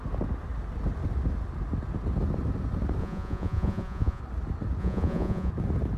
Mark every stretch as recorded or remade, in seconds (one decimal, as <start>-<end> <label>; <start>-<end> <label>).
0.0-3.0 recorded; 3.0-4.2 remade; 4.2-4.8 recorded; 4.8-5.5 remade; 5.5-6.0 recorded